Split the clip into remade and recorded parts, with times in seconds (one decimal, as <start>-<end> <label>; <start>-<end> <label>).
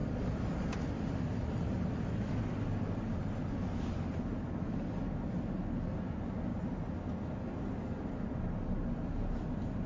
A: 0.0-2.3 remade; 2.3-3.1 recorded; 3.1-4.3 remade; 4.3-9.9 recorded